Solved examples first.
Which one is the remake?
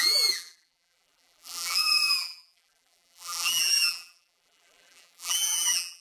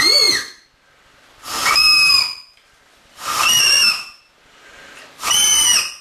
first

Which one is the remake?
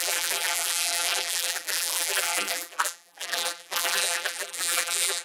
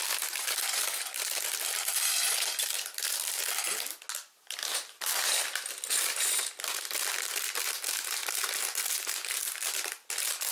first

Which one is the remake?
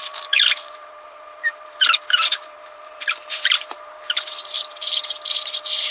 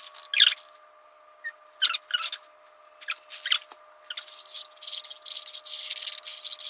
first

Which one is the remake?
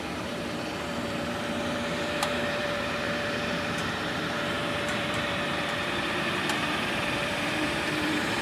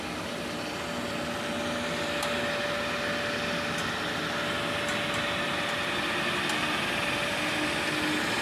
first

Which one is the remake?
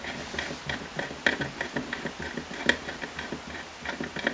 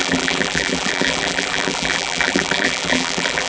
second